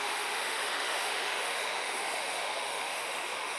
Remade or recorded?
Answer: remade